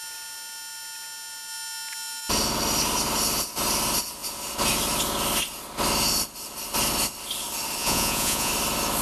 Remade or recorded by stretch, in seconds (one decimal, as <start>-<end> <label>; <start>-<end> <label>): 0.0-7.8 recorded; 7.8-8.5 remade; 8.5-9.0 recorded